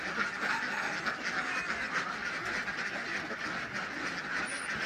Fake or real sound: real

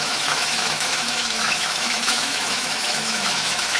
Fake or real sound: fake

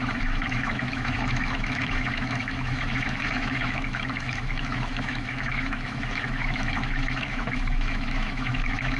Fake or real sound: fake